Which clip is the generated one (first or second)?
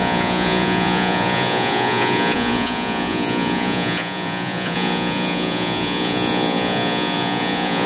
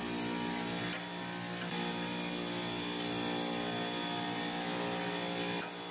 first